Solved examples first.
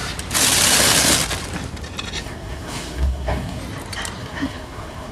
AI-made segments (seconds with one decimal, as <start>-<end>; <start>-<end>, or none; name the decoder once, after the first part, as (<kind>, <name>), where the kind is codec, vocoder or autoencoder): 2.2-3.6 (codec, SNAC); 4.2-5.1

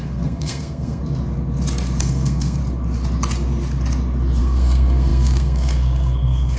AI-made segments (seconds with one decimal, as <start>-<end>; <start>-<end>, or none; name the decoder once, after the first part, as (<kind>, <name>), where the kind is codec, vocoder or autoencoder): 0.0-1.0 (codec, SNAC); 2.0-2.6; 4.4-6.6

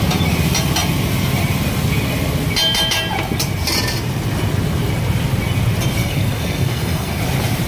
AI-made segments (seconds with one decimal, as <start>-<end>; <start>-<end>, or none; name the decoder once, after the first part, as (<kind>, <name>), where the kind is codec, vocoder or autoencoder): 6.0-7.2 (codec, SNAC)

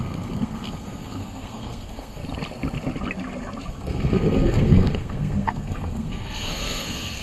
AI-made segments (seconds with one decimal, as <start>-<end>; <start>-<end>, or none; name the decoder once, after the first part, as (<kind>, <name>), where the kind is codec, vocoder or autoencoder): 0.0-2.2 (codec, SNAC); 3.7-7.2